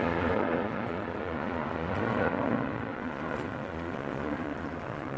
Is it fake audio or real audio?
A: fake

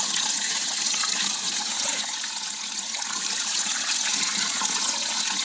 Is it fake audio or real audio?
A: fake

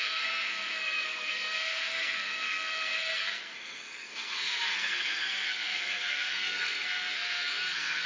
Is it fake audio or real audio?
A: fake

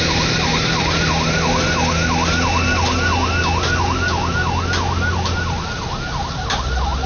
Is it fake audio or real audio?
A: real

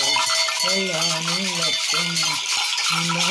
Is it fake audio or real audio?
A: real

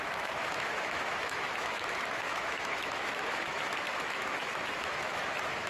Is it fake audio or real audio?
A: fake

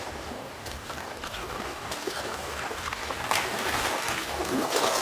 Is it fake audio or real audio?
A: fake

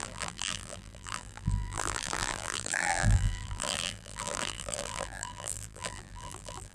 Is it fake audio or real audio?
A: fake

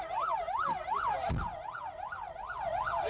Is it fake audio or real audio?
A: real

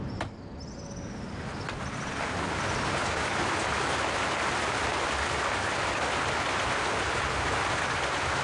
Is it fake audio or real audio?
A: real